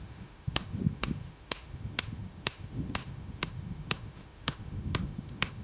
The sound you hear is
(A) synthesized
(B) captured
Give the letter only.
A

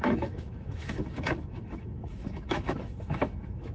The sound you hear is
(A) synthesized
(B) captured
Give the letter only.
A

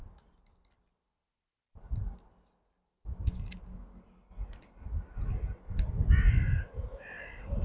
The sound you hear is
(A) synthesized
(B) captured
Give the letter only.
B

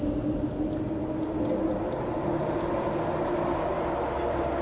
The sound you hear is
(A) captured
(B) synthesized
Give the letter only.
A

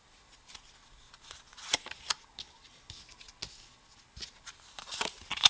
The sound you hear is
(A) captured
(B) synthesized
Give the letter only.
A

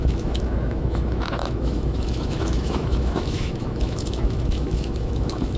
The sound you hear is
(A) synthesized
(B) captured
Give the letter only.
A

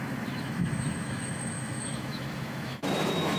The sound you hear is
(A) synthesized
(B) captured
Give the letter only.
A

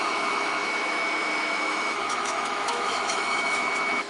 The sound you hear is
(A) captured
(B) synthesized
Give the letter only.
B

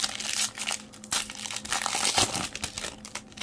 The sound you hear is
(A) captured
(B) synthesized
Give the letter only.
A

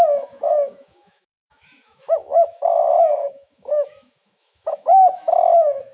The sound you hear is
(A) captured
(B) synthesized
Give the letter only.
B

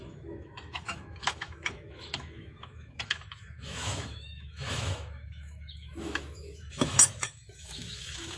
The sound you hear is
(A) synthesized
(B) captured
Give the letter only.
A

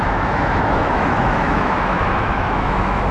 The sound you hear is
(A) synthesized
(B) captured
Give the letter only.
A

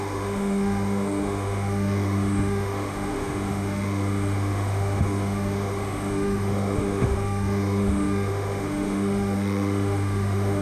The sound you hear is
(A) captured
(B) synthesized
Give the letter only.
B